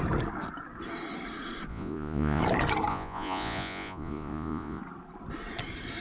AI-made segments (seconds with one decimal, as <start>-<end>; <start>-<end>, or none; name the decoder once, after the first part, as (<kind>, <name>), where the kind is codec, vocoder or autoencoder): 1.7-2.4 (vocoder, Vocos); 2.9-4.8